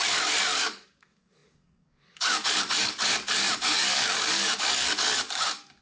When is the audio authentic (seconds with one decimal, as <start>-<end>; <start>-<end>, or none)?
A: none